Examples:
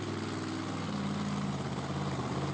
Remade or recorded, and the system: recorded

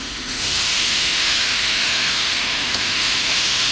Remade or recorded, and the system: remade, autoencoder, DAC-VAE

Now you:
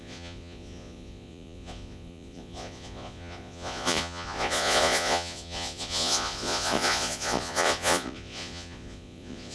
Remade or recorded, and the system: remade, vocoder, Vocos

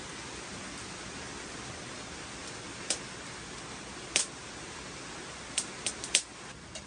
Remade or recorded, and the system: recorded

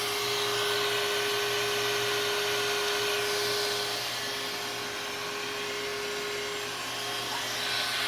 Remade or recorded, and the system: recorded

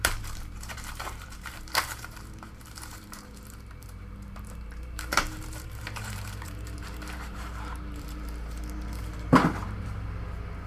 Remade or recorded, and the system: remade, vocoder, BigVGAN v2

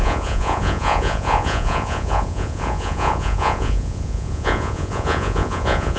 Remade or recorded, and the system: remade, vocoder, Vocos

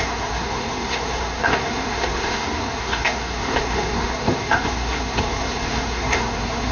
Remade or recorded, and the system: remade, codec, SNAC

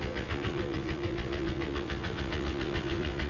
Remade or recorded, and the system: remade, vocoder, WaveNeXt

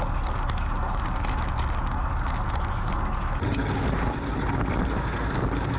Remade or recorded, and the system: recorded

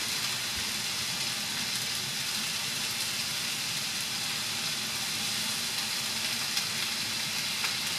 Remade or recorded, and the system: recorded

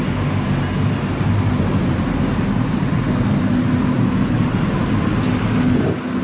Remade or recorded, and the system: recorded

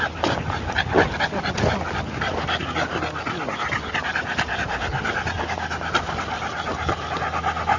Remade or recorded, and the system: recorded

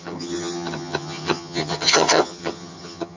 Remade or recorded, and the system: remade, vocoder, HiFi-GAN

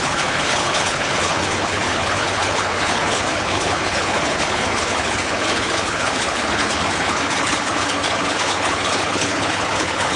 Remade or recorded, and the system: remade, codec, HILCodec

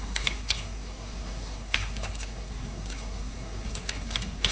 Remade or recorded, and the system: remade, codec, SNAC